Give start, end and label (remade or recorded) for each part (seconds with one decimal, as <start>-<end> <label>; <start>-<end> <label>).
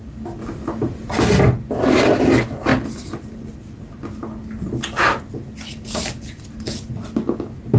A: 0.0-0.4 recorded; 0.4-1.4 remade; 1.4-7.8 recorded